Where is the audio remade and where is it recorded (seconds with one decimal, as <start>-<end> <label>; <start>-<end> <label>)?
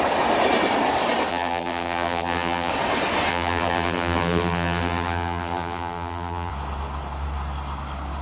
0.0-1.3 recorded; 1.3-2.7 remade; 2.7-3.3 recorded; 3.3-6.5 remade; 6.5-8.2 recorded